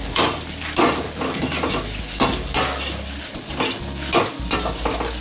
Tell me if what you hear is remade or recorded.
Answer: recorded